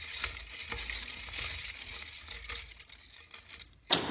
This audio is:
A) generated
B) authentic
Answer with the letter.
B